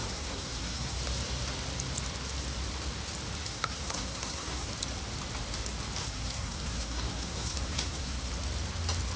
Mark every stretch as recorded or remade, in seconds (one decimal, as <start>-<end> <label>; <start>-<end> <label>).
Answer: 0.0-1.0 remade; 1.0-3.4 recorded; 3.4-4.7 remade; 4.7-6.0 recorded; 6.0-8.3 remade; 8.3-9.2 recorded